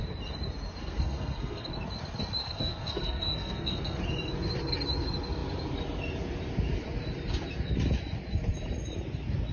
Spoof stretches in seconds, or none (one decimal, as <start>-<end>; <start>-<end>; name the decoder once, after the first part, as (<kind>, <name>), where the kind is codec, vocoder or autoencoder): 0.8-1.7 (codec, SNAC); 2.4-4.0